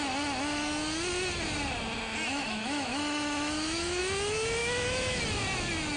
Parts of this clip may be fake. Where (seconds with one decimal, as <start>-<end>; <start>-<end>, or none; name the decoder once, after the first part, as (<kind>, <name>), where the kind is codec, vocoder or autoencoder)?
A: 2.3-4.0 (autoencoder, DAC-VAE); 4.6-5.2